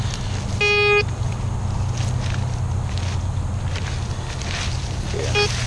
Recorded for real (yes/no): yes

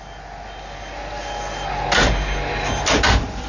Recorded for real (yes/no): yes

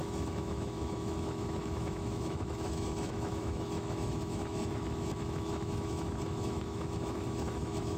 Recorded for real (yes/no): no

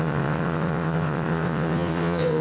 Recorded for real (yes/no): no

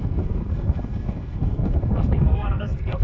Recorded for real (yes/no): no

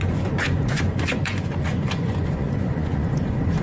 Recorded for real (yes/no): no